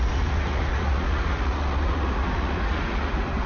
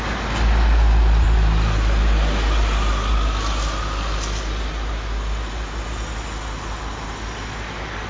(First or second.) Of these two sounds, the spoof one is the first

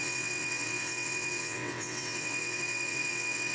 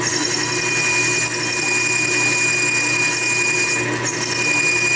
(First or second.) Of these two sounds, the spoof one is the first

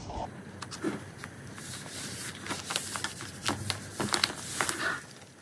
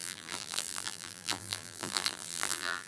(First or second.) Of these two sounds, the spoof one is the second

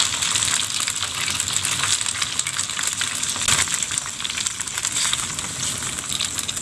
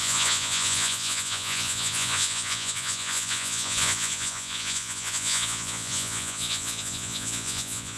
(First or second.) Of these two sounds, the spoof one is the second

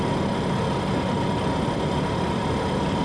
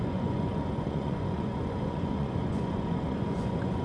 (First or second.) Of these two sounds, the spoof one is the second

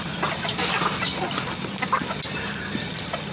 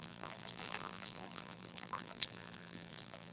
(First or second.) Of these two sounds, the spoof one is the second